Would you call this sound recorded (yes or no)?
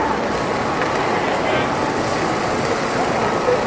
yes